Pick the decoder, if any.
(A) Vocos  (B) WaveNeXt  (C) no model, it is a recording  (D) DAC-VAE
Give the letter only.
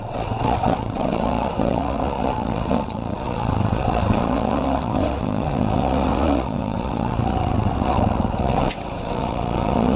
B